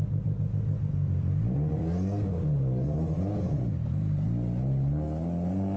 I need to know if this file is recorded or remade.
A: recorded